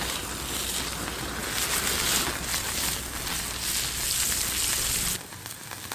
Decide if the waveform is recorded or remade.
recorded